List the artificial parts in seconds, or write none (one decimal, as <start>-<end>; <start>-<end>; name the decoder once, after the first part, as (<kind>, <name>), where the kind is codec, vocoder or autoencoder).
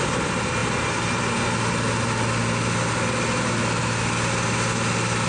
none